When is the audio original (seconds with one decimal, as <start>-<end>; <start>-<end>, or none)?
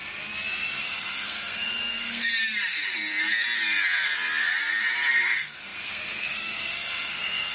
0.0-0.8; 2.3-5.1